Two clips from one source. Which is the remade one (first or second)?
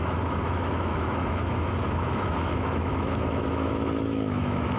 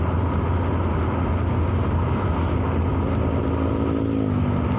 first